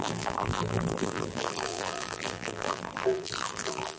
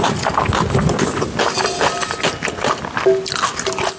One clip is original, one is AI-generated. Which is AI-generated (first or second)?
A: first